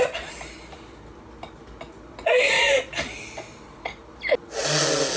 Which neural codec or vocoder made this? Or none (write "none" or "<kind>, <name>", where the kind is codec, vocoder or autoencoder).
none